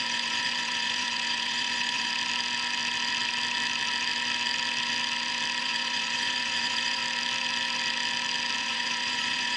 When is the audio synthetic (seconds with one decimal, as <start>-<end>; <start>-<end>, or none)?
0.0-2.1; 5.6-7.0; 8.6-9.6